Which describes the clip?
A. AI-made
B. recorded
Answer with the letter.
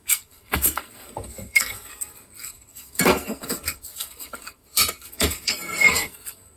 A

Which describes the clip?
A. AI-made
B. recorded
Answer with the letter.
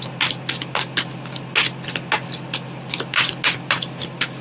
B